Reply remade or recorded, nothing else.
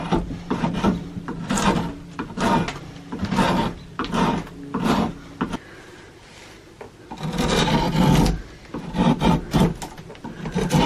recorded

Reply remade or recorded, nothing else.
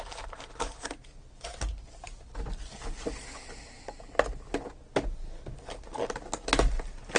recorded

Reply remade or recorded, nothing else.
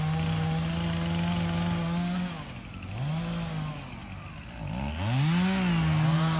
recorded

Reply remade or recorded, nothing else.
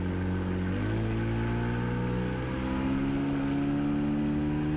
recorded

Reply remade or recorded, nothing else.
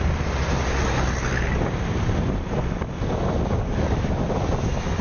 recorded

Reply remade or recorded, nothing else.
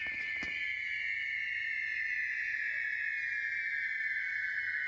recorded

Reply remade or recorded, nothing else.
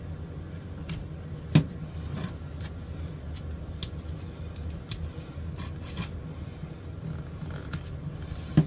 recorded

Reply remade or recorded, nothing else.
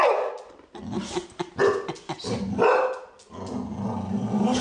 recorded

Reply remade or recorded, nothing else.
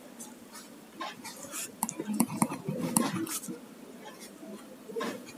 recorded